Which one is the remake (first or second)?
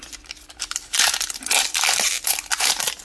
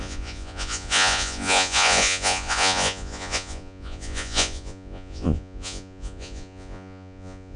second